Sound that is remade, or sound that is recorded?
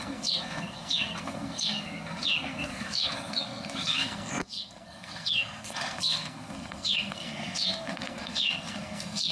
remade